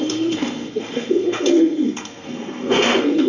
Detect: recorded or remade remade